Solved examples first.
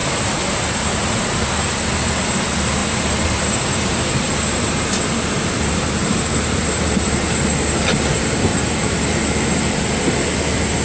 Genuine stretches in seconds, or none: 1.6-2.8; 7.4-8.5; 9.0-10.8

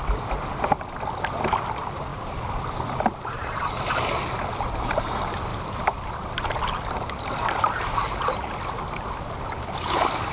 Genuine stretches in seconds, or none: 0.0-2.1; 3.8-5.5; 6.4-10.3

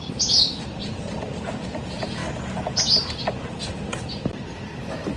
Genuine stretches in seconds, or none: 2.2-3.7

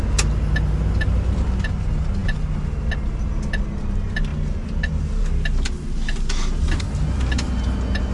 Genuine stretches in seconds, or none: 0.0-8.1

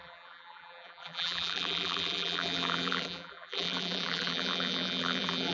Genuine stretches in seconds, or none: none